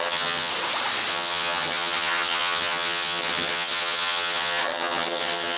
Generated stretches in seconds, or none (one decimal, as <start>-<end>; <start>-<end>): 0.0-0.5; 1.1-5.6